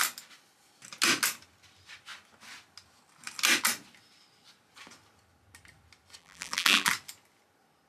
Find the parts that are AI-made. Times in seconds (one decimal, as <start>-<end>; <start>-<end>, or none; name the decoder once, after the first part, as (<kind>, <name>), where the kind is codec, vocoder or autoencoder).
6.2-6.9 (vocoder, BigVGAN v2)